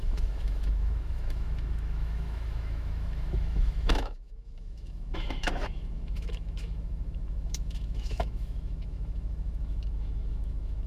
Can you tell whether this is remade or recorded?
remade